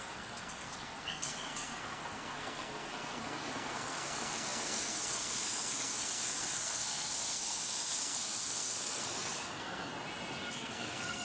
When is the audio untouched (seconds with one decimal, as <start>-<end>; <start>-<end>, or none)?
9.9-10.5